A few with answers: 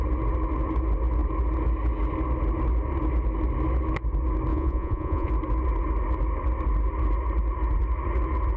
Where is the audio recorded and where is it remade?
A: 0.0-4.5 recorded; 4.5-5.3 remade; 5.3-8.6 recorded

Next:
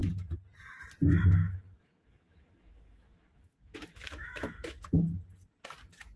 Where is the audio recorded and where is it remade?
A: 0.0-1.4 recorded; 1.4-5.0 remade; 5.0-6.2 recorded